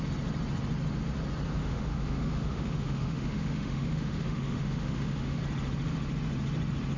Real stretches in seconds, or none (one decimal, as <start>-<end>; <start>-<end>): 0.0-1.6; 5.4-7.0

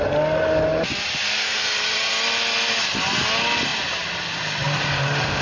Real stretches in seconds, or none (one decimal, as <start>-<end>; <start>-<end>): 0.0-0.7; 2.1-3.7

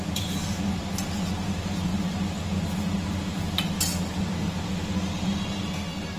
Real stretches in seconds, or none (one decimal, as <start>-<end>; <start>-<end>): 0.0-6.2